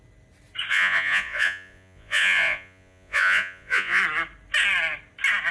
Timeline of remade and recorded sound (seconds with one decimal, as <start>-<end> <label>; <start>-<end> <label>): 0.0-0.7 recorded; 0.7-4.0 remade; 4.0-5.5 recorded